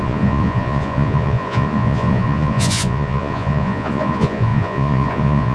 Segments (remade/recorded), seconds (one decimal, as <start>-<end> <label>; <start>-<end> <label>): 0.0-5.5 remade